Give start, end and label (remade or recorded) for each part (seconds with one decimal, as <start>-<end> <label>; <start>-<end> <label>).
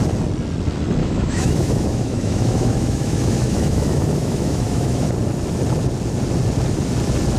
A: 0.0-1.0 recorded; 1.0-5.1 remade; 5.1-7.4 recorded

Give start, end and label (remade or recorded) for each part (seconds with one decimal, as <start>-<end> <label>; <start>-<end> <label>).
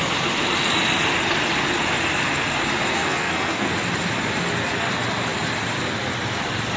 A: 0.0-2.9 recorded; 2.9-3.7 remade; 3.7-6.8 recorded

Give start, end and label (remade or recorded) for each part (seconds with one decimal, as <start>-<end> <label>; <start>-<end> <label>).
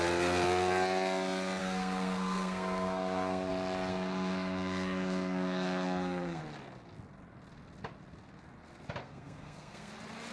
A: 0.0-1.6 recorded; 1.6-3.5 remade; 3.5-3.9 recorded; 3.9-6.4 remade; 6.4-9.0 recorded; 9.0-9.9 remade; 9.9-10.3 recorded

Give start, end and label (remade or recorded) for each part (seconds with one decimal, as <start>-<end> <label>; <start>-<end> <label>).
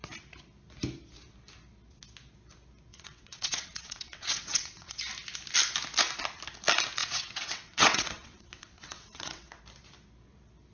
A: 0.0-2.9 recorded; 2.9-5.0 remade; 5.0-7.0 recorded; 7.0-9.6 remade; 9.6-10.7 recorded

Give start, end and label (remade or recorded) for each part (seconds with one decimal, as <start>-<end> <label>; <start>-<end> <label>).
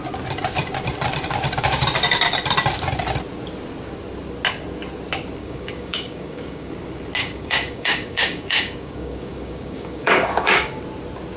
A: 0.0-5.4 recorded; 5.4-6.7 remade; 6.7-7.2 recorded; 7.2-10.8 remade; 10.8-11.4 recorded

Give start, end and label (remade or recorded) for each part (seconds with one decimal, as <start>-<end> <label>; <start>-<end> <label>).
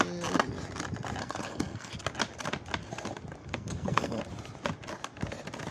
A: 0.0-1.2 recorded; 1.2-1.9 remade; 1.9-3.4 recorded; 3.4-4.2 remade; 4.2-5.7 recorded